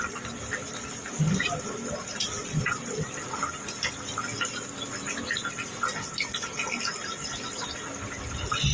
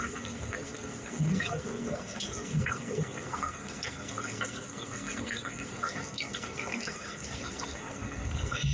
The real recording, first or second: first